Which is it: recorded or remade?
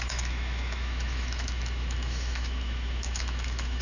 remade